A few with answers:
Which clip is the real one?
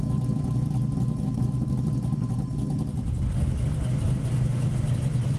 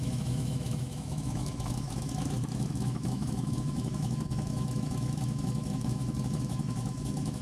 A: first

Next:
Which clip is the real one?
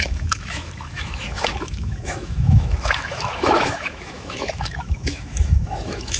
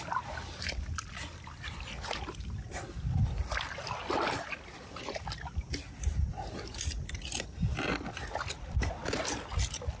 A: second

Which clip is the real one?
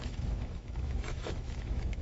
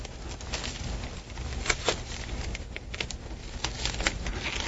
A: second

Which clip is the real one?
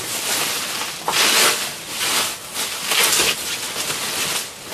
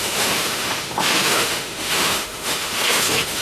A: first